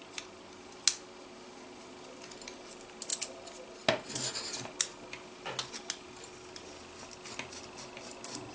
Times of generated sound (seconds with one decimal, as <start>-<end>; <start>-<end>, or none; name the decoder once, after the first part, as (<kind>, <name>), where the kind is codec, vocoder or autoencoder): none